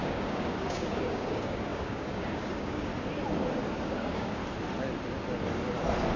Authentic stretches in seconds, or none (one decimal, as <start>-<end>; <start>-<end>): 2.9-3.7; 4.4-6.2